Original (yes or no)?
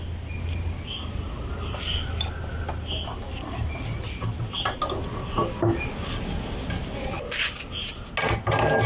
yes